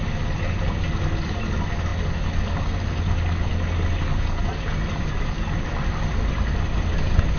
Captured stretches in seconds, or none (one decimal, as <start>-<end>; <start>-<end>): 0.0-7.4